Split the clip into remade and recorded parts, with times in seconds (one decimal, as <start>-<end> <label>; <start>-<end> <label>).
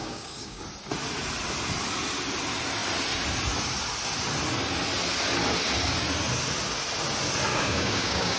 0.0-0.6 remade; 0.6-7.5 recorded; 7.5-8.4 remade